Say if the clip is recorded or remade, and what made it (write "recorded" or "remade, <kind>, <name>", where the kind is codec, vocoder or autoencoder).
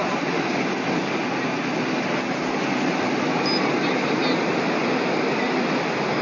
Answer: recorded